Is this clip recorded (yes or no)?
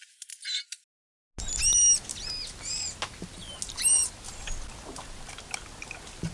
yes